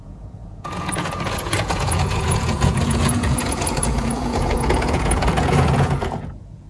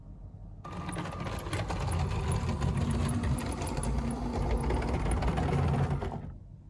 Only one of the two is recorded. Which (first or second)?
second